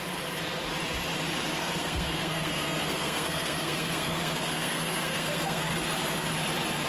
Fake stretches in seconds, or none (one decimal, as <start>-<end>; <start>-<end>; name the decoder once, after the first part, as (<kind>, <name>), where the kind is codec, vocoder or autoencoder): 1.6-5.7 (codec, SNAC)